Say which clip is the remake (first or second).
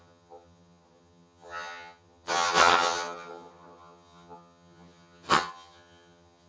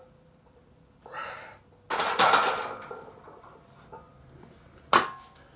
first